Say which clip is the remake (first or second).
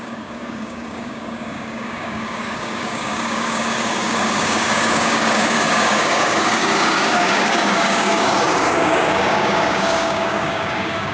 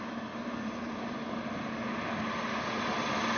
first